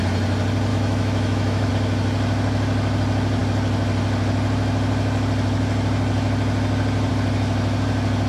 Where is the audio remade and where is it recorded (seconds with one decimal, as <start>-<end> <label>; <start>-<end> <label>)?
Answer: 0.0-0.7 recorded; 0.7-1.7 remade; 1.7-8.3 recorded

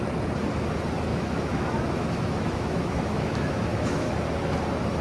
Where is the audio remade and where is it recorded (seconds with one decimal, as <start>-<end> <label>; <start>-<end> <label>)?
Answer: 0.0-1.1 recorded; 1.1-4.1 remade; 4.1-5.0 recorded

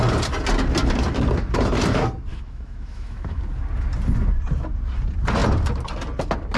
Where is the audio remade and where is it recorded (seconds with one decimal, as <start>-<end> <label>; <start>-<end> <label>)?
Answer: 0.0-2.3 recorded; 2.3-3.4 remade; 3.4-6.6 recorded

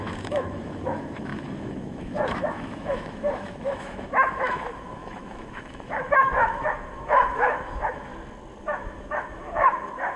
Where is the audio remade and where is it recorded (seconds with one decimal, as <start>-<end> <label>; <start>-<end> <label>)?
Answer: 0.0-8.1 remade; 8.1-8.6 recorded; 8.6-10.2 remade

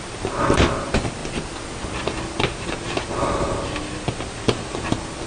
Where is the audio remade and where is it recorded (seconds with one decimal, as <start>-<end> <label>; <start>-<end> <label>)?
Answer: 0.0-5.3 recorded

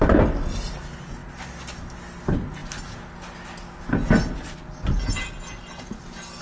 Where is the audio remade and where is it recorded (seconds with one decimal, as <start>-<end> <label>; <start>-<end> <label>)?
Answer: 0.0-6.4 recorded